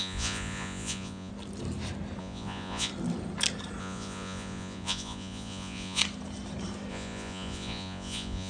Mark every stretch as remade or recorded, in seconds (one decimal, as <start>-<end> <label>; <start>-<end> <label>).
0.0-1.3 remade; 1.3-2.2 recorded; 2.2-2.9 remade; 2.9-3.8 recorded; 3.8-6.0 remade; 6.0-6.9 recorded; 6.9-8.5 remade